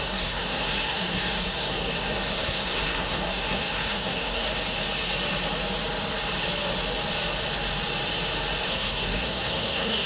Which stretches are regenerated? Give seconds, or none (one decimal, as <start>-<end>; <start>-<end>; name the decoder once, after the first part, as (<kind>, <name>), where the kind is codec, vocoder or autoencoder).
0.0-4.5 (codec, SNAC); 8.7-10.1